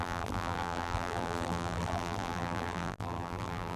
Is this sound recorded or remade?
remade